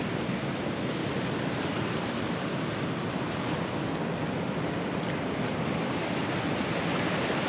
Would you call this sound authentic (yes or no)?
yes